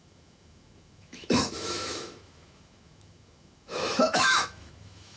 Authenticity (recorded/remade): remade